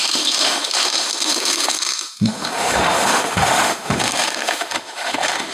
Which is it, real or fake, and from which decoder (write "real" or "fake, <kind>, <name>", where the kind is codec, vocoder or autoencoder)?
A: fake, autoencoder, DAC-VAE